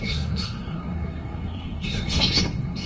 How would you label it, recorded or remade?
remade